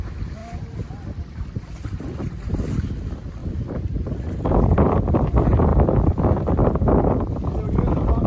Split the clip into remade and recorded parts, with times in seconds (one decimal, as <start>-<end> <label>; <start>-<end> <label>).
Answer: 0.0-0.4 recorded; 0.4-2.9 remade; 2.9-5.7 recorded; 5.7-6.9 remade; 6.9-8.3 recorded

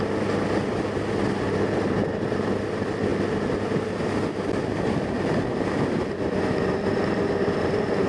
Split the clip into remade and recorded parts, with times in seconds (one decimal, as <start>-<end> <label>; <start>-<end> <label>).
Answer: 0.0-8.1 recorded